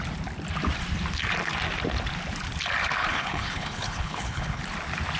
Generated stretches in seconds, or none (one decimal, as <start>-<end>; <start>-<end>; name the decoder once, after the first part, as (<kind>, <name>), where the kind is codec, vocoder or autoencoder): 3.0-4.6 (codec, HILCodec)